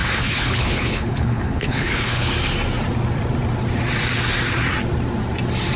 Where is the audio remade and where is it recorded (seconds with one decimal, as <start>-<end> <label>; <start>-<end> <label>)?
0.0-2.3 remade; 2.3-5.8 recorded